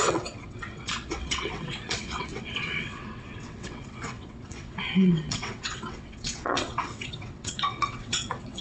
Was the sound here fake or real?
fake